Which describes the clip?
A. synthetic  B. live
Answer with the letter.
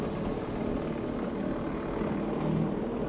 B